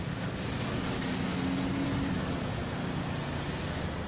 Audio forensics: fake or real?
real